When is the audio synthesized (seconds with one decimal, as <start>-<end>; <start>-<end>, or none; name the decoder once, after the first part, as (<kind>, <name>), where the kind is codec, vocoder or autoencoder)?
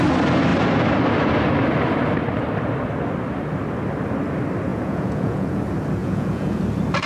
4.7-5.6 (vocoder, Vocos); 6.0-6.6